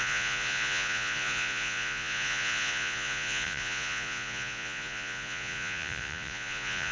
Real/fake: fake